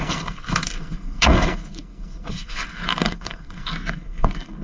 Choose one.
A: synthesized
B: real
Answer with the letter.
A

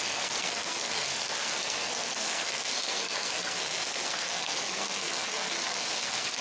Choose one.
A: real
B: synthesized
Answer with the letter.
B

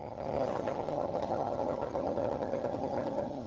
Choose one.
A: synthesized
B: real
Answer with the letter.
A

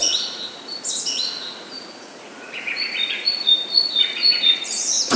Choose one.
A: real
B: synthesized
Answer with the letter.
B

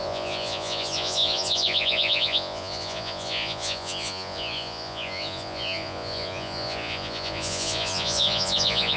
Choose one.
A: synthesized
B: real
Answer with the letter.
A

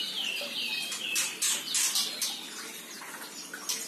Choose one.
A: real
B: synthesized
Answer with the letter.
A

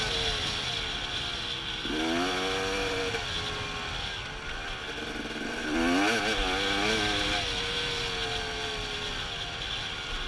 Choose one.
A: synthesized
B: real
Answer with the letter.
B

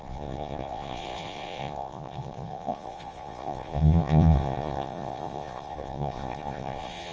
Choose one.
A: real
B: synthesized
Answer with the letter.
B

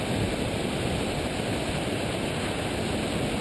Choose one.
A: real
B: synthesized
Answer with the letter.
A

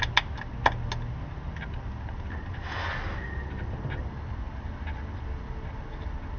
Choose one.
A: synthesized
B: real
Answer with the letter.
B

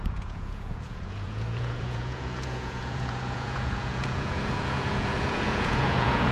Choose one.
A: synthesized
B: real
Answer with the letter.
A